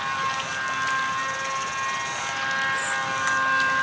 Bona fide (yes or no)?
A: yes